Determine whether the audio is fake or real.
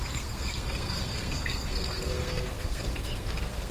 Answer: fake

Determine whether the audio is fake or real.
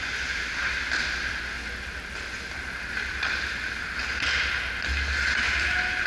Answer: real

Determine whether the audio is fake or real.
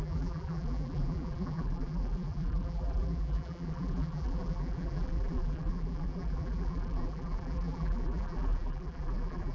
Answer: fake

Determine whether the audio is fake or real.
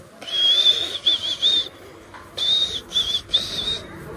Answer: real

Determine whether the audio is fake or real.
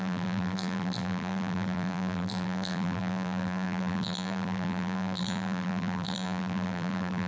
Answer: fake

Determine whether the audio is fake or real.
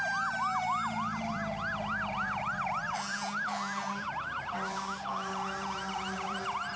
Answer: fake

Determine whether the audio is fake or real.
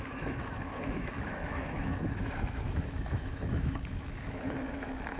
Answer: fake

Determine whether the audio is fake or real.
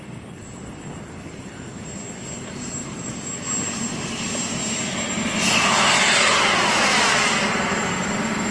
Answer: real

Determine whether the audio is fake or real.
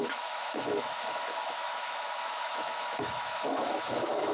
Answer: fake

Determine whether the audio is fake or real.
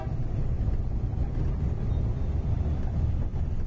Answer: real